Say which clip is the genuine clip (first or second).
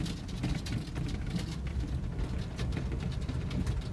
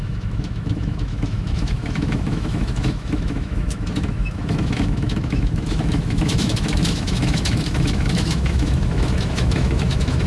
first